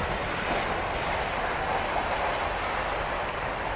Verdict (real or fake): real